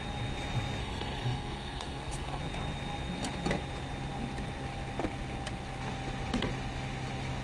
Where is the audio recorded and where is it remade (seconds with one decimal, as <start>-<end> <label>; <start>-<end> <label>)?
0.0-0.8 recorded; 0.8-2.4 remade; 2.4-7.4 recorded